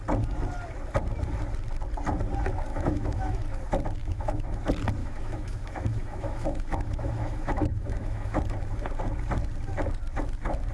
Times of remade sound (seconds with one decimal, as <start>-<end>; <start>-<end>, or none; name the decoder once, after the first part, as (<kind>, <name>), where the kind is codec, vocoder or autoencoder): 2.7-3.4 (autoencoder, DAC-VAE); 4.0-4.6; 5.0-8.4